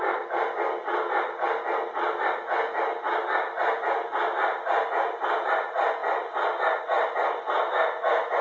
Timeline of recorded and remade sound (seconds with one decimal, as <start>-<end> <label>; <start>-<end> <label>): 0.0-8.4 recorded